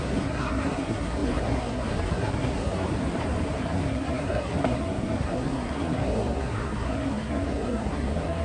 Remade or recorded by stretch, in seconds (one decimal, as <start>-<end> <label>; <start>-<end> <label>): 0.0-2.9 remade; 2.9-3.6 recorded; 3.6-8.4 remade